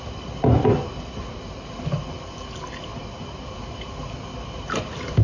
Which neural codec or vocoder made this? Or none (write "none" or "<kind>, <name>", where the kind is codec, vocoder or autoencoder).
none